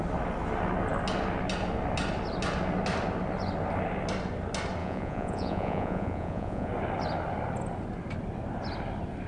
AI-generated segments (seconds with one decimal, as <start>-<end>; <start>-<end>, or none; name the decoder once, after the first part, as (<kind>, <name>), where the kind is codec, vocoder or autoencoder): 4.8-6.7 (vocoder, Vocos)